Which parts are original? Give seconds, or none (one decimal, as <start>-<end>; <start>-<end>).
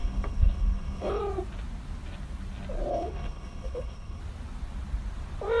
1.2-2.9; 4.2-5.6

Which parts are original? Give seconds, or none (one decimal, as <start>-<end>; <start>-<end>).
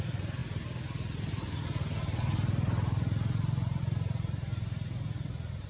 0.4-3.8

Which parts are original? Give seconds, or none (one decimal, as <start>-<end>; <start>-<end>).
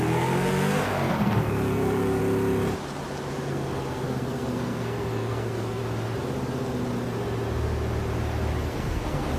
2.2-3.3; 5.8-8.6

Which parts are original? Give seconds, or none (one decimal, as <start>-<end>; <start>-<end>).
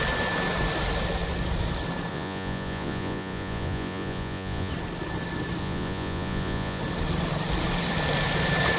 0.0-2.1; 4.7-5.6; 6.8-8.8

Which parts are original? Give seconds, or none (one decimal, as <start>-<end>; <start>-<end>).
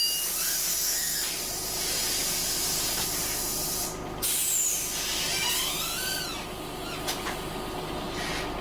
0.0-0.7; 1.4-8.6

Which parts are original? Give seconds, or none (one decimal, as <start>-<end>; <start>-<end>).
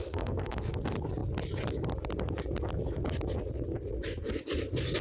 0.7-5.0